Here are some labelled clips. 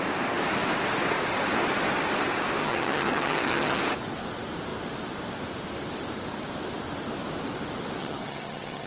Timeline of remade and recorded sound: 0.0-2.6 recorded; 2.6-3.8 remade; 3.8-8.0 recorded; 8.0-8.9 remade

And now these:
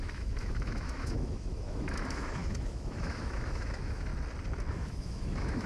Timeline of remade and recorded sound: 0.0-4.1 remade; 4.1-4.7 recorded; 4.7-5.7 remade

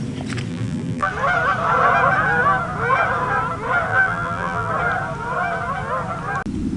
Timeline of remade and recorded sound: 0.0-0.5 recorded; 0.5-1.1 remade; 1.1-3.9 recorded; 3.9-4.7 remade; 4.7-6.8 recorded

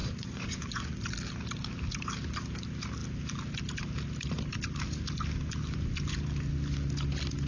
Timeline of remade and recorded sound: 0.0-1.0 remade; 1.0-7.5 recorded

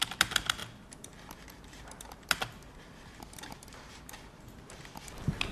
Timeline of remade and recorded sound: 0.0-5.5 recorded

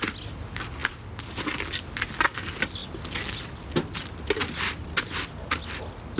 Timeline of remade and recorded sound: 0.0-6.2 recorded

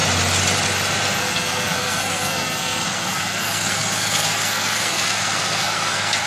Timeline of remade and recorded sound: 0.0-1.2 recorded; 1.2-6.3 remade

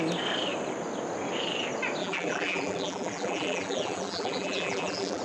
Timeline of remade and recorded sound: 0.0-2.0 recorded; 2.0-5.2 remade